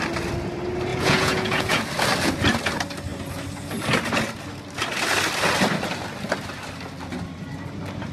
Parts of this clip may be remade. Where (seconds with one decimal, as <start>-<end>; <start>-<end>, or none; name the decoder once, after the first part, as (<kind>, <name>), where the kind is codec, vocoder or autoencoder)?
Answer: 0.9-1.8 (vocoder, Vocos)